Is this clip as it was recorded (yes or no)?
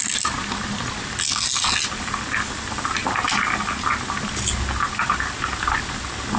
yes